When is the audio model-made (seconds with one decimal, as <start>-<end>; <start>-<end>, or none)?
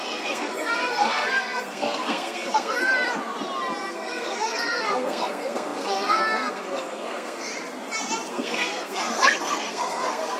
0.0-2.9; 3.9-7.5; 8.3-10.4